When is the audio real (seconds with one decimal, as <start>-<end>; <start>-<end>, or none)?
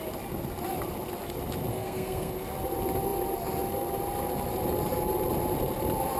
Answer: 0.0-1.7; 2.3-6.2